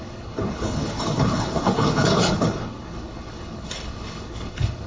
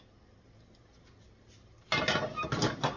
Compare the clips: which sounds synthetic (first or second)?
first